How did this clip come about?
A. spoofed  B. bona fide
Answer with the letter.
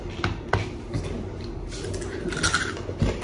B